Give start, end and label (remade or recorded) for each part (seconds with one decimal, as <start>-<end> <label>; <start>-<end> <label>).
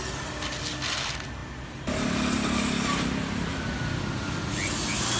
0.0-5.2 recorded